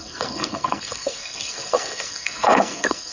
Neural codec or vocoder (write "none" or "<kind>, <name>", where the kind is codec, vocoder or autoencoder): codec, SNAC